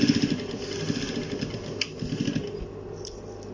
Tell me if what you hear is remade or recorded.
recorded